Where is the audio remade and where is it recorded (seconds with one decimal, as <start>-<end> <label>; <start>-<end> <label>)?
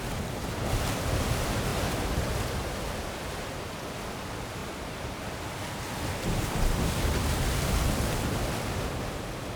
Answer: 0.0-4.6 recorded; 4.6-5.2 remade; 5.2-9.6 recorded